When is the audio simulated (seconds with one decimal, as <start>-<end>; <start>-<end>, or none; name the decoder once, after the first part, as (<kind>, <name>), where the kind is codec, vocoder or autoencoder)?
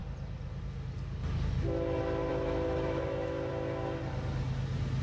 2.3-3.5 (autoencoder, DAC-VAE)